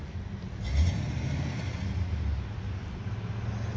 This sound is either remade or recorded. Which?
recorded